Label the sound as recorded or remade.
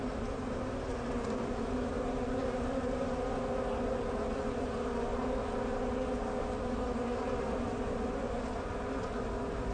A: recorded